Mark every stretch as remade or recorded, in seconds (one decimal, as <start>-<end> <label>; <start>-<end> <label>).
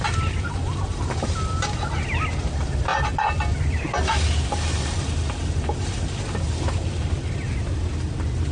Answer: 0.0-8.5 recorded